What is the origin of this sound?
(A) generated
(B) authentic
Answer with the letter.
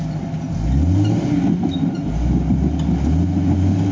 B